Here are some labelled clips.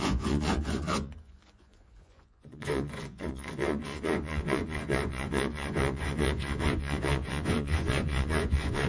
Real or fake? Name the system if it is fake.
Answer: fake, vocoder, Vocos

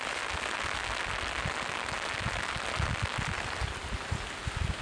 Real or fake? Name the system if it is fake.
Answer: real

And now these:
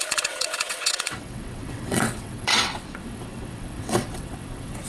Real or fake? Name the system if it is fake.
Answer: fake, vocoder, WaveNeXt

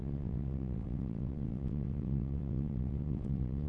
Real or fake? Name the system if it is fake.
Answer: fake, vocoder, WaveNeXt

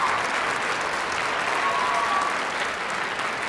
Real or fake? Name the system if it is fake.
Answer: real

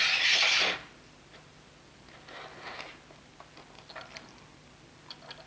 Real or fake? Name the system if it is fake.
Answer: real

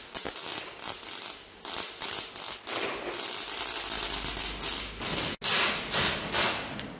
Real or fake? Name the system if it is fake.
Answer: real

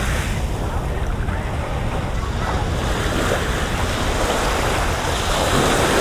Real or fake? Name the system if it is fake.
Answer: real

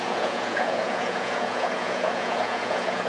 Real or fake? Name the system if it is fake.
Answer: fake, vocoder, Vocos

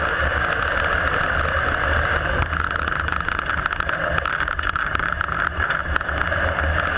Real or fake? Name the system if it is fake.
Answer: real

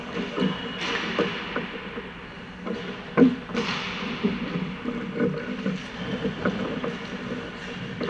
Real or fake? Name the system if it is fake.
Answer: real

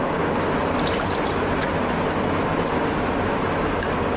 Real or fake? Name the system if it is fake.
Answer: real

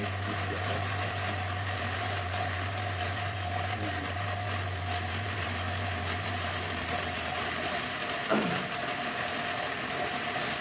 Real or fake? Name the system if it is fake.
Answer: fake, vocoder, BigVGAN v2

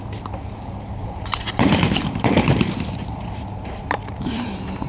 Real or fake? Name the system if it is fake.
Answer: fake, vocoder, BigVGAN v2